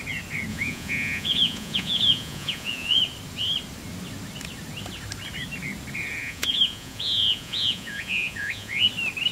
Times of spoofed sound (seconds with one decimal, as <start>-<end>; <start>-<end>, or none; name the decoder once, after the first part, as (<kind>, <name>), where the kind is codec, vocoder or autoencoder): 0.5-3.0 (vocoder, Vocos); 6.2-8.8